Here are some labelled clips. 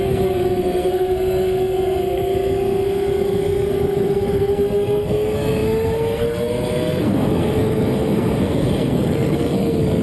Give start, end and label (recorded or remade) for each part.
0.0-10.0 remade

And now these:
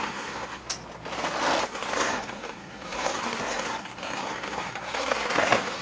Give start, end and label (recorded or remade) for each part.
0.0-0.6 remade; 0.6-1.6 recorded; 1.6-5.8 remade

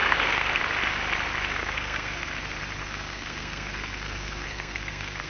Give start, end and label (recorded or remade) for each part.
0.0-0.6 remade; 0.6-1.6 recorded; 1.6-2.4 remade; 2.4-2.8 recorded; 2.8-5.3 remade

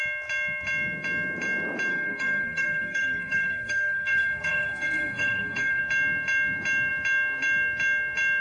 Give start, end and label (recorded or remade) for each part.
0.0-1.9 recorded; 1.9-5.8 remade; 5.8-8.4 recorded

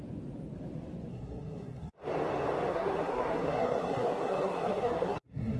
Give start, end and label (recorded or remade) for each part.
0.0-1.1 recorded; 1.1-1.9 remade; 1.9-2.7 recorded; 2.7-5.6 remade